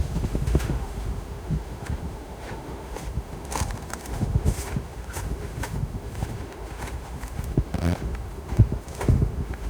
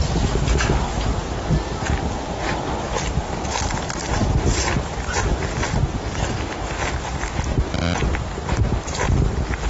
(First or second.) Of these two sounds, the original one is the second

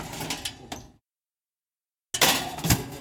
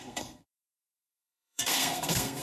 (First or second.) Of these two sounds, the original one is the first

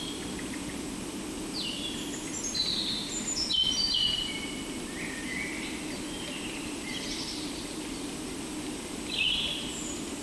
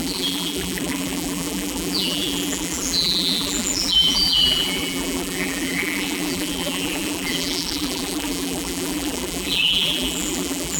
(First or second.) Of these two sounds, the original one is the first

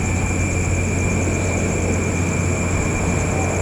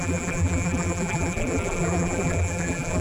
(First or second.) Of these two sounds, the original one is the first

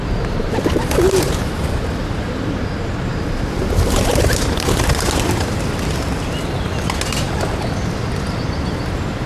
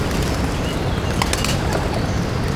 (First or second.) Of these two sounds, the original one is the first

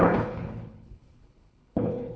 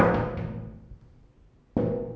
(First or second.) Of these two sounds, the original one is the second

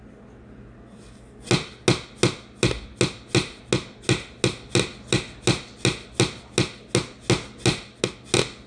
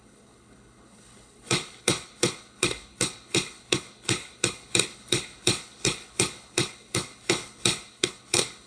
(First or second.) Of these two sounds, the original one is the first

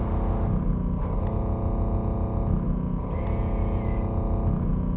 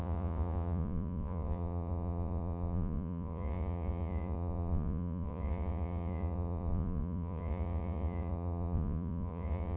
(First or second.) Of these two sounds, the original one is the first